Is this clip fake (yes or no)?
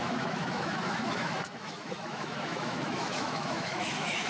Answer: yes